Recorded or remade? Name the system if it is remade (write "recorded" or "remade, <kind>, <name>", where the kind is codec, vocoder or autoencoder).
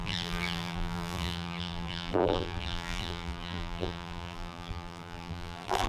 remade, vocoder, BigVGAN v2